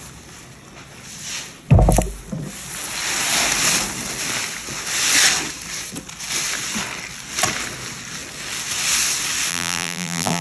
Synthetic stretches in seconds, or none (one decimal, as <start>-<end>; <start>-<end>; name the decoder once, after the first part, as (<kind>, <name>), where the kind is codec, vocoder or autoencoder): 9.5-10.4 (vocoder, BigVGAN v2)